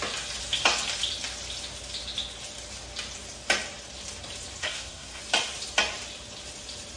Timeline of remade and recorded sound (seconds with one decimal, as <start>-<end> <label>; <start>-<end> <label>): 0.0-4.6 recorded; 4.6-5.2 remade; 5.2-7.0 recorded